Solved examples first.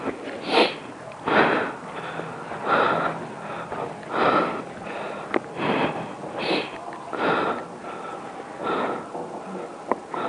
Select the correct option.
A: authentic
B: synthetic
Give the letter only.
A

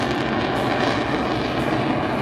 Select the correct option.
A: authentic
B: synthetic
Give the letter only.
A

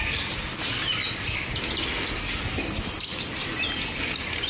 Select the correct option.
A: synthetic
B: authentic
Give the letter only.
B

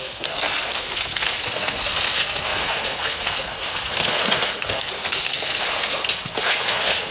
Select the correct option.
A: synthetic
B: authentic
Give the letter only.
A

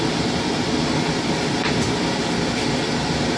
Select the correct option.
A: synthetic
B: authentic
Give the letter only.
B